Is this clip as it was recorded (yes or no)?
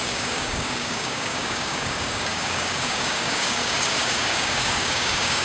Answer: no